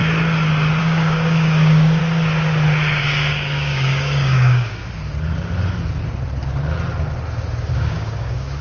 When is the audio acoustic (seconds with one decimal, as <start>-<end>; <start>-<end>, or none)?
0.0-0.8; 2.0-3.0; 4.8-7.7

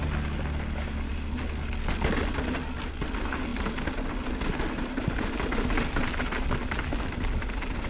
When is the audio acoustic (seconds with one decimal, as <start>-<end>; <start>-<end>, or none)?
0.0-7.9

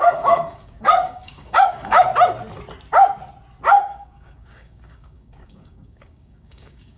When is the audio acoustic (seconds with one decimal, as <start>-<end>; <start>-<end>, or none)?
2.1-3.9

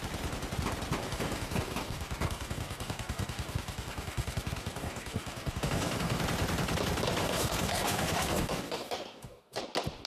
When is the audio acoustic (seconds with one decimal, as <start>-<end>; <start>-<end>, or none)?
0.0-1.0; 6.2-7.2; 9.6-10.1

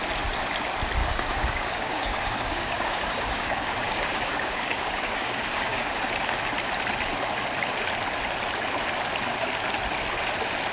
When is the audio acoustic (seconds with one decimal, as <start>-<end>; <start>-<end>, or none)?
0.0-1.0; 6.0-10.7

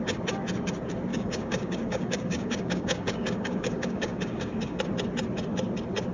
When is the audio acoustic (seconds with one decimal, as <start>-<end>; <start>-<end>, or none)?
0.0-1.1; 4.8-6.1